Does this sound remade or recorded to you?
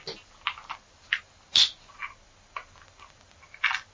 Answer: recorded